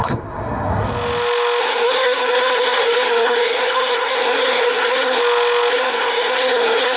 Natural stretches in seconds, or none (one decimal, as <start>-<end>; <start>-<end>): 0.9-1.6; 5.2-5.7